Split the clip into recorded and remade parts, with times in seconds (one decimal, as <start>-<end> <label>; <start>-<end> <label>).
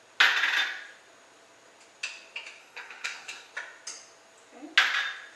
0.0-2.6 recorded; 2.6-3.5 remade; 3.5-5.4 recorded